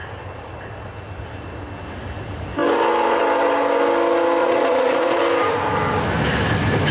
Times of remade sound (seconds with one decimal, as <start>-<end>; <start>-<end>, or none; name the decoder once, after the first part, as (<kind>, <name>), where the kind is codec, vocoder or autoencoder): 4.4-5.2 (vocoder, Vocos)